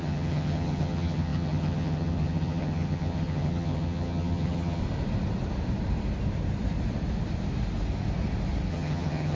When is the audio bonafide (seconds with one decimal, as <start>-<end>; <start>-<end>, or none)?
4.8-8.7